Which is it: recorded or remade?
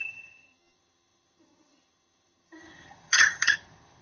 remade